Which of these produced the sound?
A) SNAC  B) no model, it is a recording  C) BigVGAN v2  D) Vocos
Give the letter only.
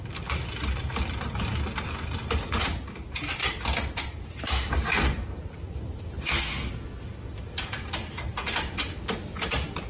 B